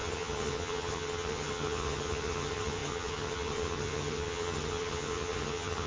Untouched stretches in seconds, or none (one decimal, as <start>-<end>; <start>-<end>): none